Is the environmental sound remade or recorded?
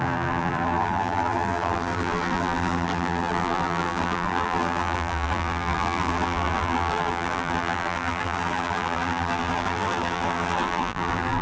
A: remade